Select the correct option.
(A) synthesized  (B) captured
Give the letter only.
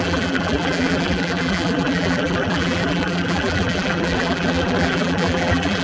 A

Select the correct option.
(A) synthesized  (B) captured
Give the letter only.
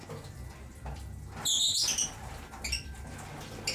B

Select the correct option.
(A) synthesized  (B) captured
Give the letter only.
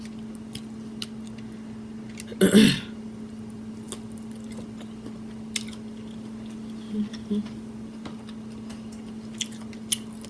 B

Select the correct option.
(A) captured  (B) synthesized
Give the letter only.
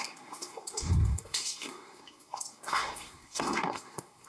B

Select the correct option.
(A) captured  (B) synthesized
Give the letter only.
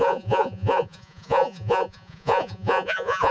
B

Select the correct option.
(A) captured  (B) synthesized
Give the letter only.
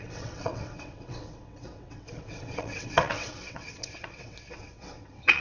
B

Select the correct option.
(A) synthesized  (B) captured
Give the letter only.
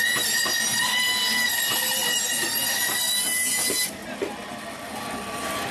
B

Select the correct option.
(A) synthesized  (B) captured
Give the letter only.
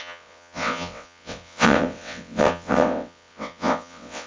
A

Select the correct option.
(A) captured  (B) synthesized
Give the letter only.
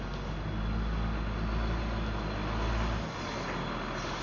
A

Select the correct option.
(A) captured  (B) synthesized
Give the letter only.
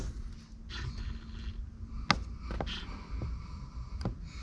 A